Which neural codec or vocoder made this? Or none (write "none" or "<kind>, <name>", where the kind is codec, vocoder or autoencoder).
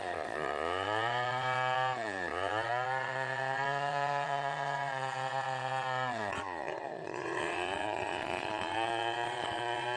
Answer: vocoder, Vocos